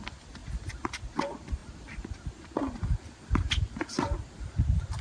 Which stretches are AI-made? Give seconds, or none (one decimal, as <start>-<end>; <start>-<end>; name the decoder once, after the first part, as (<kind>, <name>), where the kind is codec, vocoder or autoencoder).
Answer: none